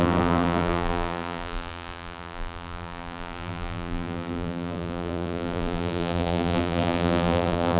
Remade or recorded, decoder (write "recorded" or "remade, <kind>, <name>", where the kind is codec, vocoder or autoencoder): remade, vocoder, BigVGAN v2